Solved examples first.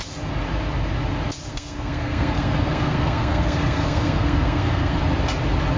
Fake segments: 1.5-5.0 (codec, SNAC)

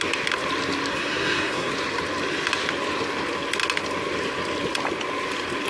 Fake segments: 0.9-1.7 (codec, SNAC)

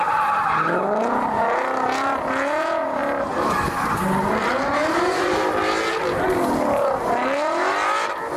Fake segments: none

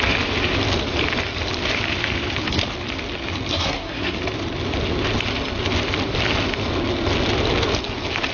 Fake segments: 3.5-4.2 (codec, SNAC)

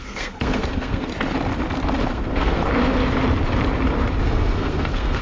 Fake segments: 0.0-1.1 (codec, SNAC); 2.1-2.6; 4.2-5.2

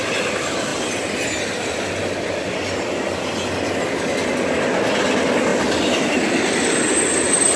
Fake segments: none